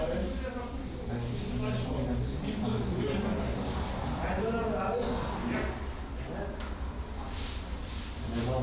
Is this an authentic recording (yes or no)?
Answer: yes